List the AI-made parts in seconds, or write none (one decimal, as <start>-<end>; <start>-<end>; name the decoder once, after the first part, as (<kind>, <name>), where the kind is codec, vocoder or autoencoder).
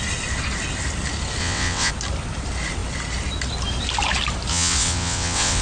1.4-1.9 (vocoder, WaveNeXt); 4.5-5.6